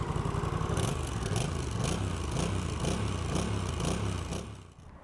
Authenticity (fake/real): real